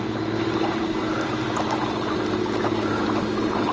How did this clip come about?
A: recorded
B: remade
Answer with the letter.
A